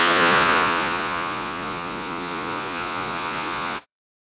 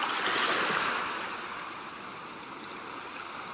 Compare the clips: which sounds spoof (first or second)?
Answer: first